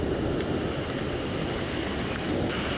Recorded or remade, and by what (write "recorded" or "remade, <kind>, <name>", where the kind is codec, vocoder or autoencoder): recorded